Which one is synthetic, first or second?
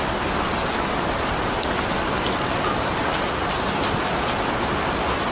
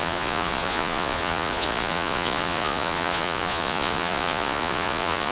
second